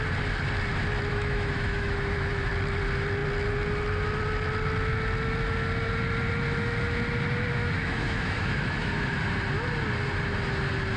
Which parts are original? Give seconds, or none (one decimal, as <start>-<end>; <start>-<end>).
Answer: 0.0-1.1; 2.5-7.6; 9.2-11.0